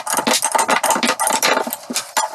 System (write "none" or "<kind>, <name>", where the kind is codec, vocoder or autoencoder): none